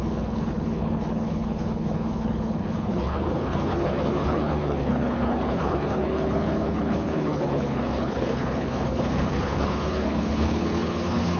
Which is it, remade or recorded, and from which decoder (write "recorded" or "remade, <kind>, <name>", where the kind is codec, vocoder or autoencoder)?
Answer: remade, codec, HILCodec